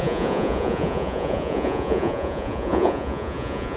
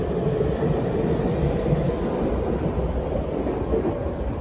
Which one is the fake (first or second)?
first